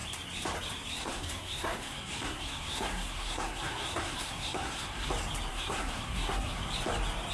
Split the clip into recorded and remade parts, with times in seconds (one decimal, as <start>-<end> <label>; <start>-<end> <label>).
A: 0.0-1.0 recorded; 1.0-5.1 remade; 5.1-5.5 recorded; 5.5-6.7 remade; 6.7-7.3 recorded